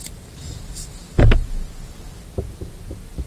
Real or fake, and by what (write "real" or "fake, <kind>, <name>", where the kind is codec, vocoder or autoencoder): real